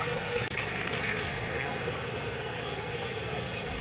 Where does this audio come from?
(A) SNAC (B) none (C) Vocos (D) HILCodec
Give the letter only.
A